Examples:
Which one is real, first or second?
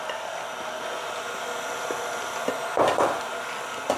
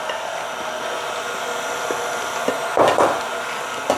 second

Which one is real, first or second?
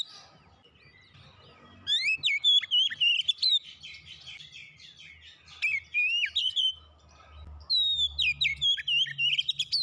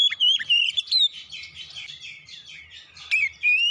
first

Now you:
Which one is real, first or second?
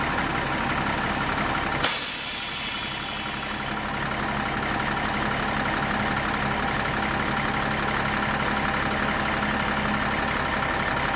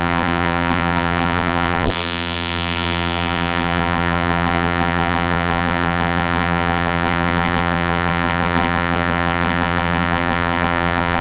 first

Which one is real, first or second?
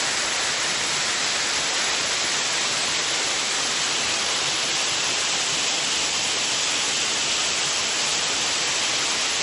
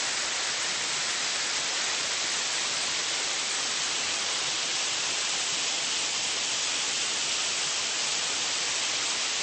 first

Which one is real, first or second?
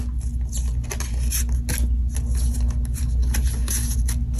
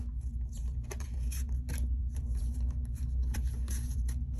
first